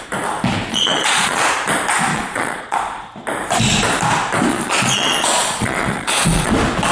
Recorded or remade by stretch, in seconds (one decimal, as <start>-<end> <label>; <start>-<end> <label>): 0.0-0.7 recorded; 0.7-1.5 remade; 1.5-2.1 recorded; 2.1-2.8 remade; 2.8-4.5 recorded; 4.5-6.5 remade; 6.5-6.9 recorded